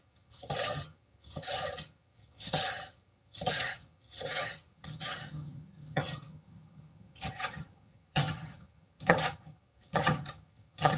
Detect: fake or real fake